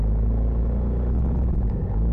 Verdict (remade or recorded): recorded